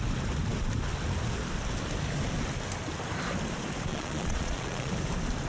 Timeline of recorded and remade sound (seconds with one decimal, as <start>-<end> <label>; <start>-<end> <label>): 0.0-3.9 recorded; 3.9-4.9 remade; 4.9-5.5 recorded